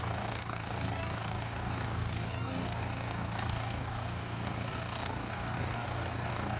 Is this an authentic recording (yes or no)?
no